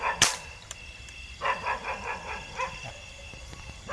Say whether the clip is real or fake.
real